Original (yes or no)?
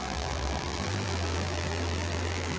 no